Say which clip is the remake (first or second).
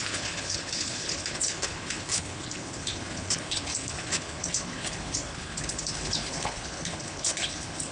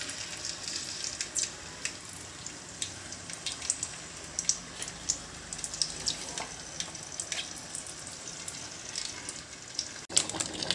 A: first